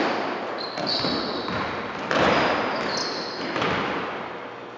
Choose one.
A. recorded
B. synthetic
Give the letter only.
A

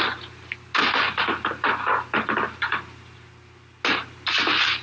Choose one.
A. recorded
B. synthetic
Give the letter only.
A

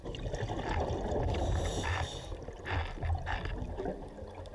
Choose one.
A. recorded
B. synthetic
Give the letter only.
A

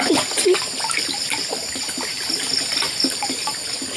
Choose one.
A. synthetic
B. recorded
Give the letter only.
B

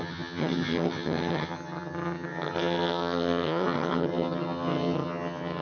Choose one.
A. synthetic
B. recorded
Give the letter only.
A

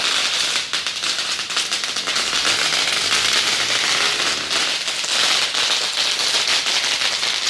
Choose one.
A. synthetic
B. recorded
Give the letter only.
B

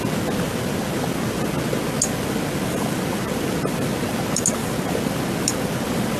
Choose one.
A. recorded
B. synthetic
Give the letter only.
A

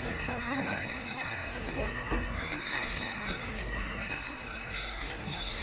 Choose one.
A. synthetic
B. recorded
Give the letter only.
A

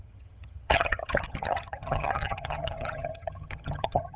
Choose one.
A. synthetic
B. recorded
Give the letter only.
A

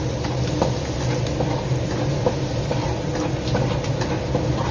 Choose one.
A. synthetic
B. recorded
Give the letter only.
B